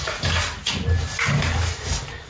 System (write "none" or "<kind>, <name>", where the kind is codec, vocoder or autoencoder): none